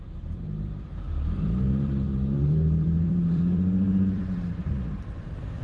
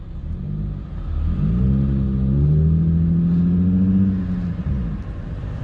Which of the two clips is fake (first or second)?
first